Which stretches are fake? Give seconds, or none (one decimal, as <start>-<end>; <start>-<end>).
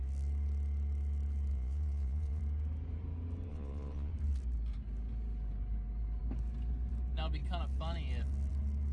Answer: 1.5-2.4; 3.5-4.1